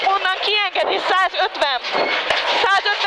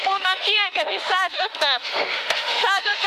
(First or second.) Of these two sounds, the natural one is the first